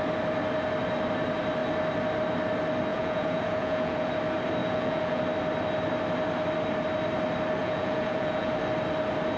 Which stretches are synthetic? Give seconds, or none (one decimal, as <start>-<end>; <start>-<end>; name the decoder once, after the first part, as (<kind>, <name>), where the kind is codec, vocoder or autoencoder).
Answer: 2.9-4.1 (vocoder, Vocos); 4.6-5.2; 7.6-8.5